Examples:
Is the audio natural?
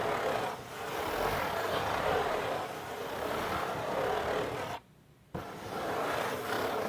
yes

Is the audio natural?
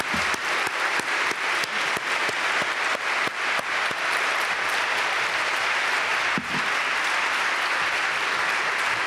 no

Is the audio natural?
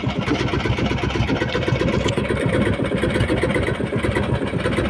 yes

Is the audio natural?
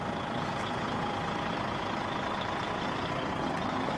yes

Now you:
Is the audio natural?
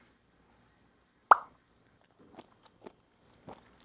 yes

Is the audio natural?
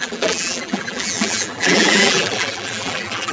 no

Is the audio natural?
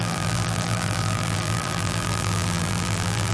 no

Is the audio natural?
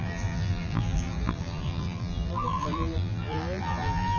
no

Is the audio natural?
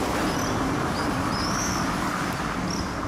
yes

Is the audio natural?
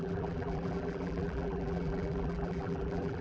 no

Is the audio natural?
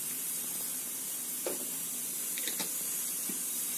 yes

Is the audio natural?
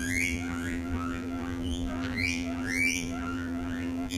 no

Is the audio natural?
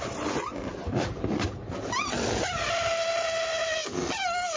yes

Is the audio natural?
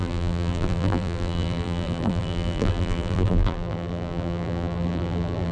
no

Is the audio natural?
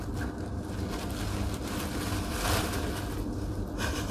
yes